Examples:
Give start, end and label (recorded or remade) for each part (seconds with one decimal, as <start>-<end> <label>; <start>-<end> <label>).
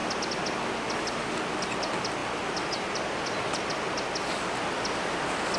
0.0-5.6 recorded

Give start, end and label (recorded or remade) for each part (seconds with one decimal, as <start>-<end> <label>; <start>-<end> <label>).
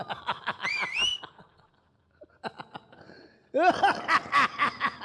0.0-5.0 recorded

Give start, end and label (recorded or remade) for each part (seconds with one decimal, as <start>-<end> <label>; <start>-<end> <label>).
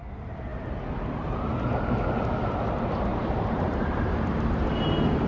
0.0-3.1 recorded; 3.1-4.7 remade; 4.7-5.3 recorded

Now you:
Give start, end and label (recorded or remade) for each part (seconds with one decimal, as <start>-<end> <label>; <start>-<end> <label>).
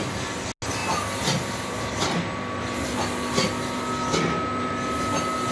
0.0-5.5 recorded